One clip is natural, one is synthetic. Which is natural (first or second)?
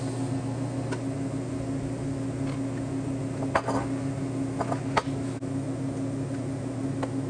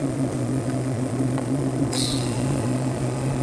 first